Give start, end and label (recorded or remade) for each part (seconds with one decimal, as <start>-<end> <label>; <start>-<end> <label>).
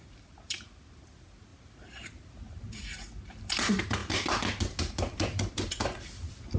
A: 0.0-6.6 recorded